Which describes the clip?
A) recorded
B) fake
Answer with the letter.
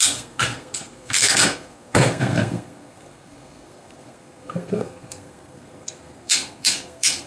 B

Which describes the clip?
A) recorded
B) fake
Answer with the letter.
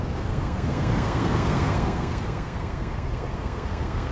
B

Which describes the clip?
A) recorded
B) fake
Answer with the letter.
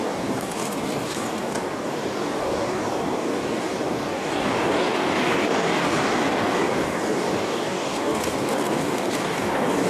B